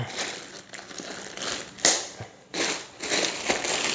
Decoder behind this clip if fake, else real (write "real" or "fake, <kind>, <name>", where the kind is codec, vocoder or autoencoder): real